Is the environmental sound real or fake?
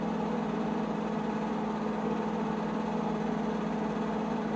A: real